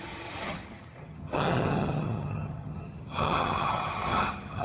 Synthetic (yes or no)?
yes